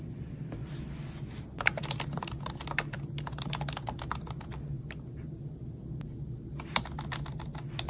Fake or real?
real